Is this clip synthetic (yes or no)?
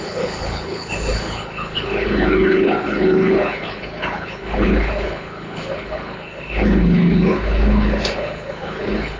yes